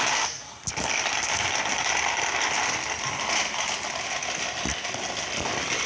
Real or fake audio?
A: real